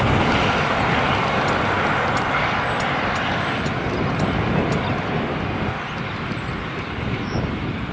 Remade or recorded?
recorded